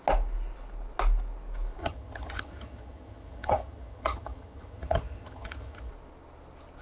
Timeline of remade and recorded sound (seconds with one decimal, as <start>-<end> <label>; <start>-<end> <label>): 0.0-1.8 recorded; 1.8-5.9 remade; 5.9-6.8 recorded